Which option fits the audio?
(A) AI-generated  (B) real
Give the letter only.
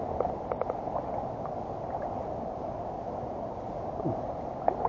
B